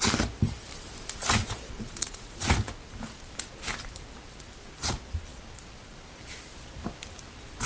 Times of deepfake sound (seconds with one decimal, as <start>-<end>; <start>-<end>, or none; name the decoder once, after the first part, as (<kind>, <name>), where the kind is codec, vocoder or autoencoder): 1.4-2.5 (vocoder, Vocos)